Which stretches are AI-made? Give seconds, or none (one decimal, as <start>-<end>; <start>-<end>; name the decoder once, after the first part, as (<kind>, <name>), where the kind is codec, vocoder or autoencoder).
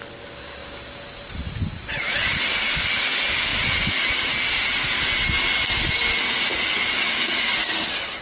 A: none